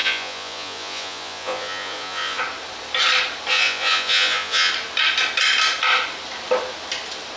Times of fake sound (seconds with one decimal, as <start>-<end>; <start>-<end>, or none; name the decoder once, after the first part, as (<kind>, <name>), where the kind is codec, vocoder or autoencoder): 0.0-2.4 (vocoder, Vocos); 3.5-4.7